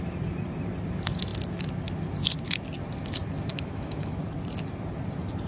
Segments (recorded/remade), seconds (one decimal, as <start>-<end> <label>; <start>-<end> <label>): 0.0-3.5 recorded; 3.5-4.2 remade; 4.2-5.5 recorded